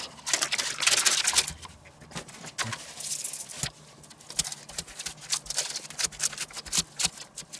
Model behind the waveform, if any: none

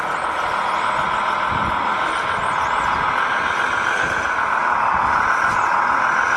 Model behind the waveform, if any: none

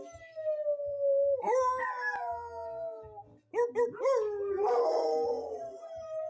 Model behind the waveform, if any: none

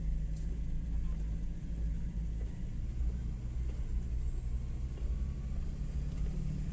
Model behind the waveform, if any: none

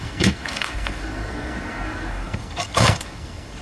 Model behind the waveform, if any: codec, SNAC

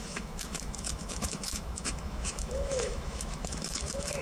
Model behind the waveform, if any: autoencoder, DAC-VAE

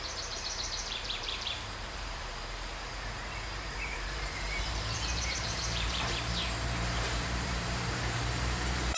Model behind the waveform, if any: vocoder, BigVGAN v2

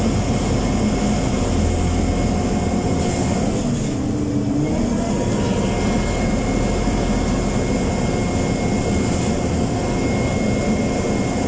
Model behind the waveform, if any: none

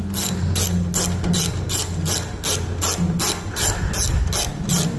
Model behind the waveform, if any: none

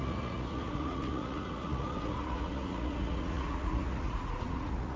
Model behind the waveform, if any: vocoder, Vocos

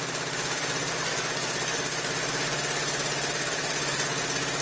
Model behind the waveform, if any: none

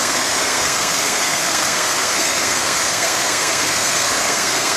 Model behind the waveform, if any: codec, SNAC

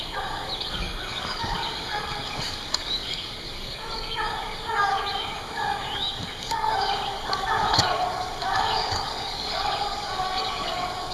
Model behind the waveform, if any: codec, DAC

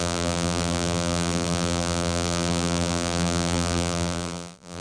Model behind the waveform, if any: vocoder, BigVGAN v2